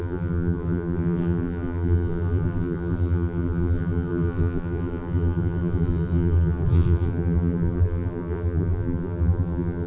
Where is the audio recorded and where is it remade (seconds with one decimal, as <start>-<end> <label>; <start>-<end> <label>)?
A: 0.0-9.9 remade